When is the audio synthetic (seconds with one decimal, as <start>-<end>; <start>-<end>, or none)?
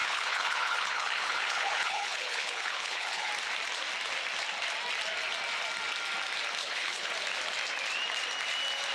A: 0.0-3.3; 6.6-7.1